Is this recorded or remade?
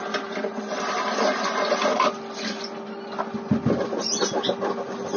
recorded